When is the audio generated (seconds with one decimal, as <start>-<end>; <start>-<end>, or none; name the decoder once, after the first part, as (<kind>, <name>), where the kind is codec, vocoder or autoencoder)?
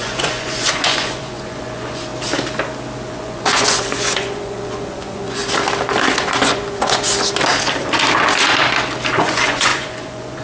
0.0-2.1 (vocoder, Vocos); 3.1-5.4; 6.2-7.1; 9.1-10.4